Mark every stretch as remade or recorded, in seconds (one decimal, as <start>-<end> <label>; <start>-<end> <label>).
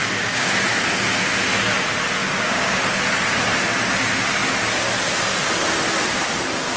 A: 0.0-0.5 remade; 0.5-2.2 recorded; 2.2-2.8 remade; 2.8-6.8 recorded